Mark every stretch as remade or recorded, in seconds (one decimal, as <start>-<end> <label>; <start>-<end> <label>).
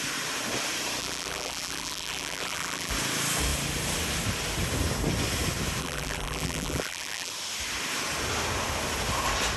0.0-1.0 recorded; 1.0-2.9 remade; 2.9-5.8 recorded; 5.8-7.3 remade; 7.3-9.6 recorded